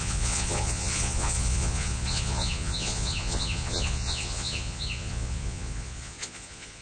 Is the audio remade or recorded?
remade